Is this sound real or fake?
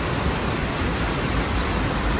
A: fake